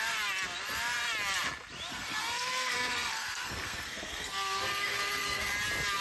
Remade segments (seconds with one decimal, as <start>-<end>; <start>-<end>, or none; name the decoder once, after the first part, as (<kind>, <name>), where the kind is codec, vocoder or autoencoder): 1.9-5.5 (codec, SNAC)